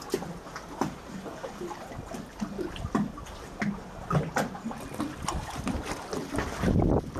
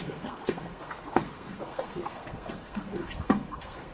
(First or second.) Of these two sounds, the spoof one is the second